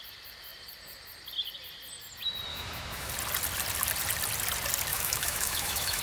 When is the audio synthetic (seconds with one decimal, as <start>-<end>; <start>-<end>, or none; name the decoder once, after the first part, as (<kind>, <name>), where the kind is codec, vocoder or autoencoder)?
2.5-3.1 (autoencoder, DAC-VAE); 4.9-6.0